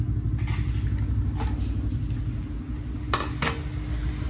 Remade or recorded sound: recorded